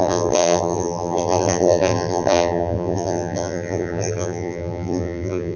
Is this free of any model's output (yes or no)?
no